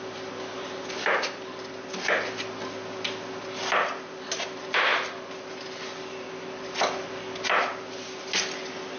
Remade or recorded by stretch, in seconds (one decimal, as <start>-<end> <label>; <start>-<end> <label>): 0.0-9.0 recorded